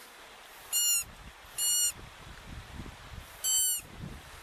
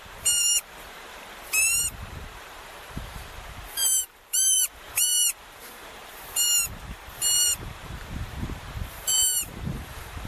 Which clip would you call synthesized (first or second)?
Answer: second